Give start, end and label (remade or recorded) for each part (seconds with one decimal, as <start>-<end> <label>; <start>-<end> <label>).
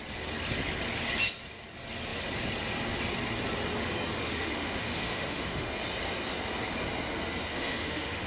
0.0-4.2 recorded; 4.2-5.7 remade; 5.7-7.5 recorded; 7.5-8.3 remade